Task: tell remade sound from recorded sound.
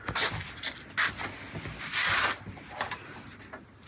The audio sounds recorded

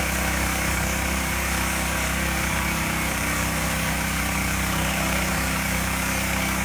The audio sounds remade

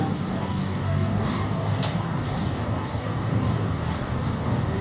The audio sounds remade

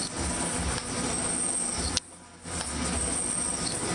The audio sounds recorded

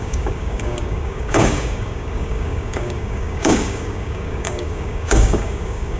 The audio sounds remade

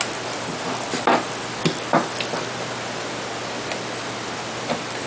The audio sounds recorded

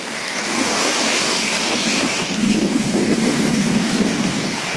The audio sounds remade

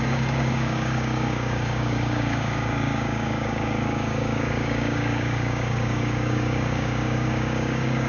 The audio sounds remade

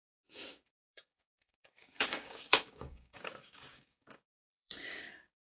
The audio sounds remade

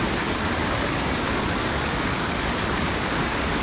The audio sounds remade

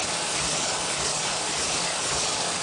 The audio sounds remade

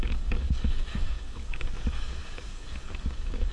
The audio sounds remade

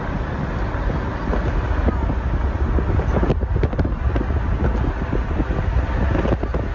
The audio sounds recorded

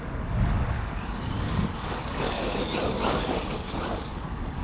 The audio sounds remade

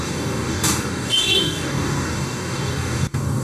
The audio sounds remade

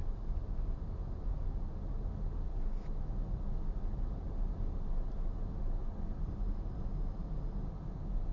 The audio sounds recorded